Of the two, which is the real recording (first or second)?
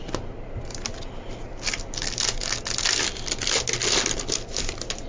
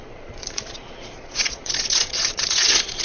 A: first